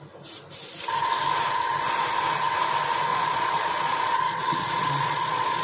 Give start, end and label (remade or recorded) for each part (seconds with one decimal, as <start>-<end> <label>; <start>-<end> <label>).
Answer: 0.0-3.1 recorded; 3.1-5.6 remade